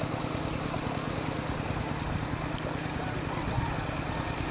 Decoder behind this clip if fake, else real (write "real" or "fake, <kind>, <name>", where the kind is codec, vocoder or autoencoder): real